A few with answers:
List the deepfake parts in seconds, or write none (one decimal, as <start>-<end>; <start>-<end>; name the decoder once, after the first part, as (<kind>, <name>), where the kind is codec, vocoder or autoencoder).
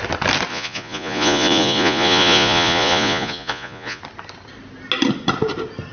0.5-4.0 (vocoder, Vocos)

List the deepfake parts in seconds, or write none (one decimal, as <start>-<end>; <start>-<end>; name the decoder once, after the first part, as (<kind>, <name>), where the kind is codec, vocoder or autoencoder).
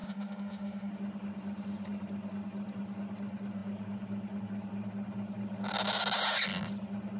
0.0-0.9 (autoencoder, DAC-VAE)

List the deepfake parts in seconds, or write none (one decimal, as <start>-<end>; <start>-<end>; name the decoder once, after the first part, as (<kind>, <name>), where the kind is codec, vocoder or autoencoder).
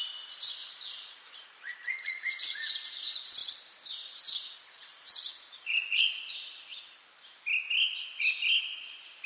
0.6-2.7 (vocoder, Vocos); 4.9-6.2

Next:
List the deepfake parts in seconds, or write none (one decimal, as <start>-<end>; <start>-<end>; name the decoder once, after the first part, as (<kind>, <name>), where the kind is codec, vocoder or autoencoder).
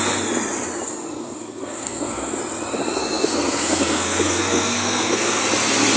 1.2-2.4 (codec, SNAC); 3.0-5.4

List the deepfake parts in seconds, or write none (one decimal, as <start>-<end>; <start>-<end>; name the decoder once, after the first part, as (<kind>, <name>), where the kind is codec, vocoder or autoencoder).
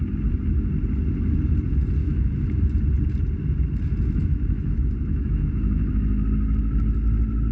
2.0-2.6 (autoencoder, DAC-VAE); 4.2-5.9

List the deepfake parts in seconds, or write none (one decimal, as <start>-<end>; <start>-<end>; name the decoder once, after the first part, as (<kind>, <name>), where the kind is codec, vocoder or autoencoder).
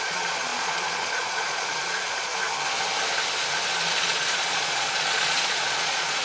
0.0-2.3 (vocoder, Vocos); 3.9-6.2